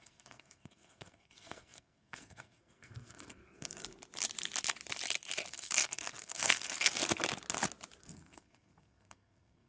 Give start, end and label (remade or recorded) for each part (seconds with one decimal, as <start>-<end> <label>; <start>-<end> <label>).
0.0-3.8 remade; 3.8-5.5 recorded; 5.5-7.0 remade; 7.0-8.0 recorded; 8.0-9.7 remade